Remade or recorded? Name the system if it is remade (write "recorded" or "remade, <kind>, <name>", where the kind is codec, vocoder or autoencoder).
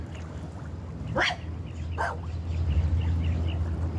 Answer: recorded